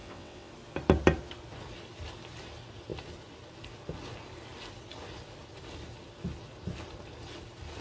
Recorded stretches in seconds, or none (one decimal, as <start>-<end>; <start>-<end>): 0.5-7.8